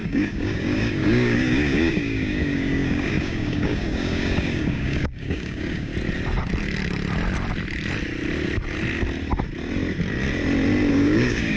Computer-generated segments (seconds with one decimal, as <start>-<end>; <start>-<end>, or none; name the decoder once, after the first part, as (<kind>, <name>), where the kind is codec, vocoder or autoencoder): 0.0-5.9 (codec, DAC); 10.9-11.6